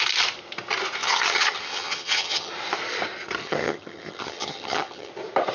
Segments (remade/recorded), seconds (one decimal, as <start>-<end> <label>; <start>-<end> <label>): 0.0-1.0 recorded; 1.0-2.5 remade; 2.5-3.4 recorded; 3.4-5.1 remade; 5.1-5.5 recorded

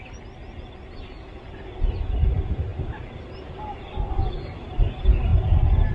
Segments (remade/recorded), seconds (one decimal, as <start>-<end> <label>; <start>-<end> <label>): 0.0-5.9 recorded

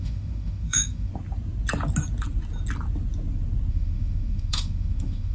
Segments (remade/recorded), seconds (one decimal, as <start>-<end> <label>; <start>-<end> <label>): 0.0-1.1 remade; 1.1-3.7 recorded; 3.7-5.3 remade

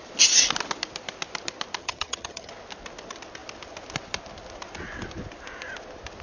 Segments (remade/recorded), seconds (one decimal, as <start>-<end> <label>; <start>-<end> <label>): 0.0-1.8 recorded; 1.8-2.5 remade; 2.5-6.2 recorded

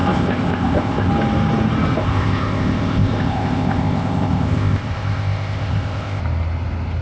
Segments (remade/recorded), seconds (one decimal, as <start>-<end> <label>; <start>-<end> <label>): 0.0-1.1 remade; 1.1-2.0 recorded; 2.0-6.2 remade; 6.2-7.0 recorded